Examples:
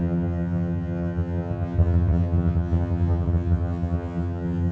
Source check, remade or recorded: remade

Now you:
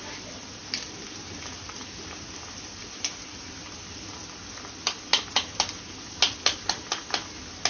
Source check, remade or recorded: recorded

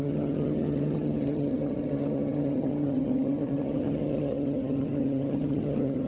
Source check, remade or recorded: remade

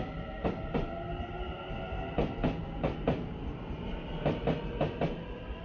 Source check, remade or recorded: recorded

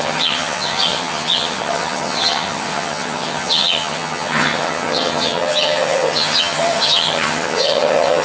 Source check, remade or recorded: remade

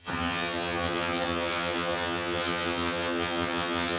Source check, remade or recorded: remade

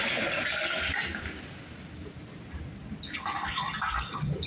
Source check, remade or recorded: recorded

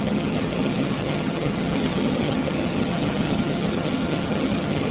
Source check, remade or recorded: remade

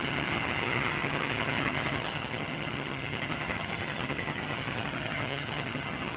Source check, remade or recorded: remade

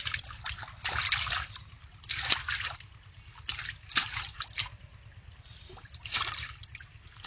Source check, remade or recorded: recorded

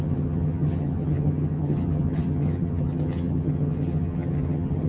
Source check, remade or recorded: remade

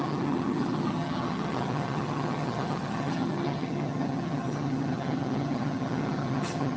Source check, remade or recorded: remade